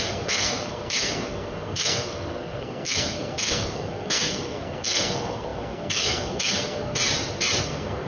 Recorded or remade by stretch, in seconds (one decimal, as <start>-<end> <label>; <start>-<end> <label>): 0.0-7.0 remade; 7.0-7.6 recorded; 7.6-8.1 remade